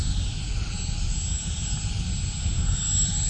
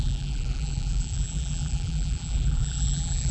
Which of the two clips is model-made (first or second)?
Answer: second